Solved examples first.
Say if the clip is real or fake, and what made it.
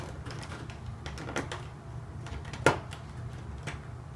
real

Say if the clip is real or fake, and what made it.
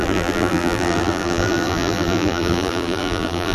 fake, vocoder, BigVGAN v2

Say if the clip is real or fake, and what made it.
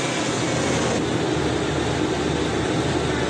real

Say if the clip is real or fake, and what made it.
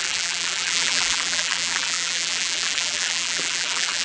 fake, vocoder, BigVGAN v2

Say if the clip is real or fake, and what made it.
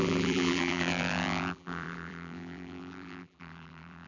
fake, vocoder, BigVGAN v2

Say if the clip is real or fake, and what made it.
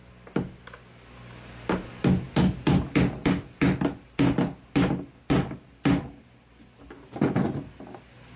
real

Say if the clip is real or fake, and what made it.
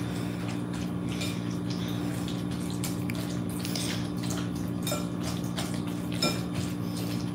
real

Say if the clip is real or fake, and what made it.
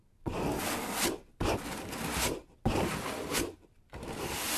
real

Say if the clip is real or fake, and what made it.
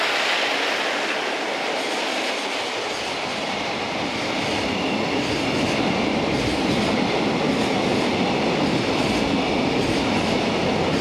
real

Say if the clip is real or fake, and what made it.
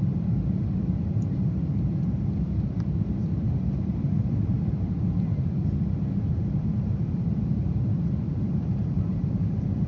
fake, vocoder, BigVGAN v2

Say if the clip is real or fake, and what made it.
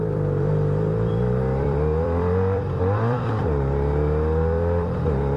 fake, vocoder, BigVGAN v2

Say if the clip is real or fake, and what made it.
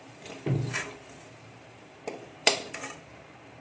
fake, vocoder, BigVGAN v2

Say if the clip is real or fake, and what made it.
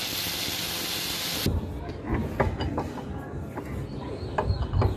real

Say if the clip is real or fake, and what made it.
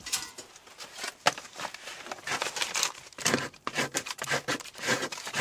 fake, vocoder, BigVGAN v2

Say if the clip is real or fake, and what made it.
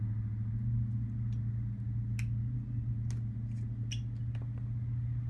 real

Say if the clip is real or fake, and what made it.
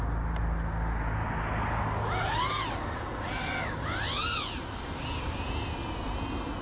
real